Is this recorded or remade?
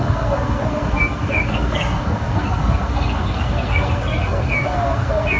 remade